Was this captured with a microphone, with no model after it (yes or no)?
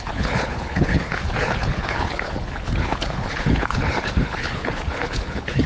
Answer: no